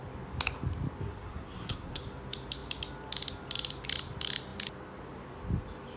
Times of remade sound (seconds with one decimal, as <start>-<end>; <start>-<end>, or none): 0.9-2.0